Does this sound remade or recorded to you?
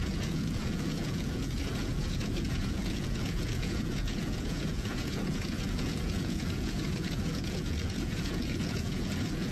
remade